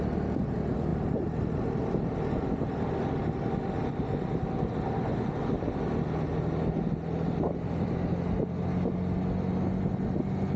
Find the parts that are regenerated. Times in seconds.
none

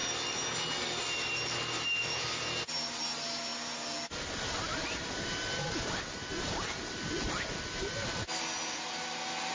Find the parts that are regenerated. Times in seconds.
none

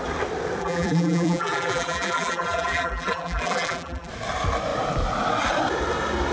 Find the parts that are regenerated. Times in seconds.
0.6-4.1 (vocoder, BigVGAN v2)

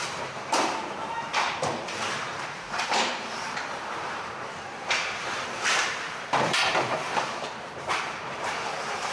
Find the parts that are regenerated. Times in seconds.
0.0-1.3 (vocoder, BigVGAN v2); 2.0-9.1

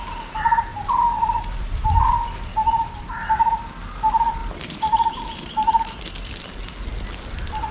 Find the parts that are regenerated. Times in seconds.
0.7-2.0 (vocoder, BigVGAN v2); 4.4-6.0